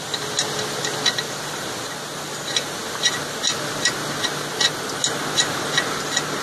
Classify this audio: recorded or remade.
recorded